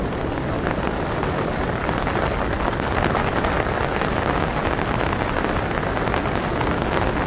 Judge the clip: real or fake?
real